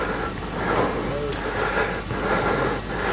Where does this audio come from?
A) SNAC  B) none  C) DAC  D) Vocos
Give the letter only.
B